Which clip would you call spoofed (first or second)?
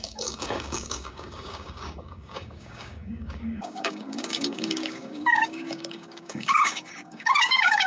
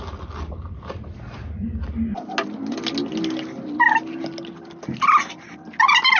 first